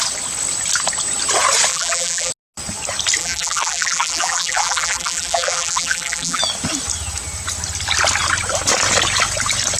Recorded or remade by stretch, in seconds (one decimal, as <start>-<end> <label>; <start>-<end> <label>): 0.0-1.7 recorded; 1.7-2.3 remade; 2.3-3.2 recorded; 3.2-6.4 remade; 6.4-9.8 recorded